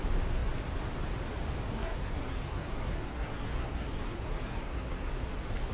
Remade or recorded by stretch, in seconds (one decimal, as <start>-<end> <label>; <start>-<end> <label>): 0.0-1.7 recorded; 1.7-5.1 remade; 5.1-5.7 recorded